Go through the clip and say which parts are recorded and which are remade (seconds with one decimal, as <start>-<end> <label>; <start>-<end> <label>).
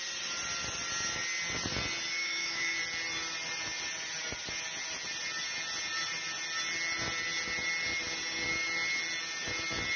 0.0-2.2 recorded; 2.2-2.8 remade; 2.8-10.0 recorded